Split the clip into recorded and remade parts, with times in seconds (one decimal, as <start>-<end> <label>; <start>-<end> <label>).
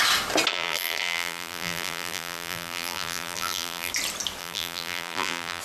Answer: 0.0-0.5 recorded; 0.5-3.9 remade; 3.9-4.4 recorded; 4.4-5.6 remade